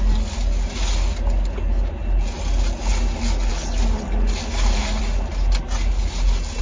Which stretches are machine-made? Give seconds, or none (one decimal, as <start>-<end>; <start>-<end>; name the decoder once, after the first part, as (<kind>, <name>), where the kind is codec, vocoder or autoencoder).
none